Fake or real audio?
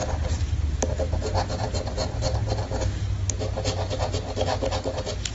real